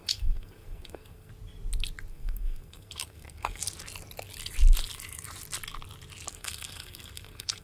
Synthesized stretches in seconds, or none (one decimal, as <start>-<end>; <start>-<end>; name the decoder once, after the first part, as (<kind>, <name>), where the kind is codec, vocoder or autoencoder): 0.0-1.3 (codec, SNAC); 2.1-3.6; 6.3-7.6